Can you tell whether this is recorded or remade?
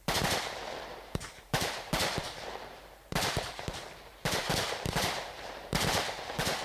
remade